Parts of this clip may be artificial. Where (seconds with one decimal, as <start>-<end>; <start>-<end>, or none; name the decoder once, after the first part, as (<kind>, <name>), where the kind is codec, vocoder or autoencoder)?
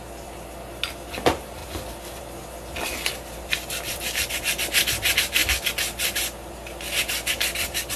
none